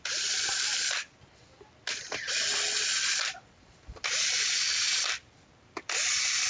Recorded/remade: recorded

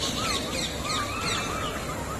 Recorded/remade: recorded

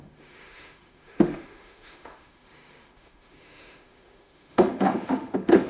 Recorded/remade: remade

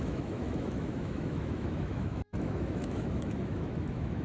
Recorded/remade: remade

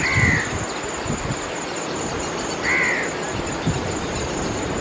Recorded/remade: recorded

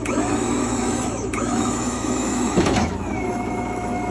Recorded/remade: remade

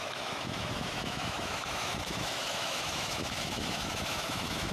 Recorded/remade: remade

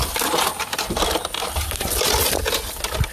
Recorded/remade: recorded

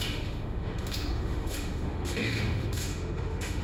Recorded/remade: remade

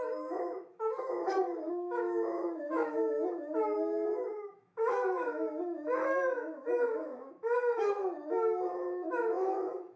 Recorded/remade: remade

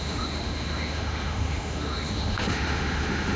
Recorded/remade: remade